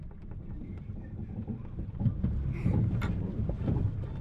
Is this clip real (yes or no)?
no